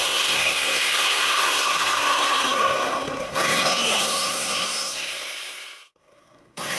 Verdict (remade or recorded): remade